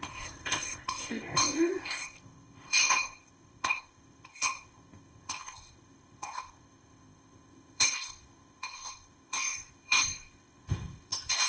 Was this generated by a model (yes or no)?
yes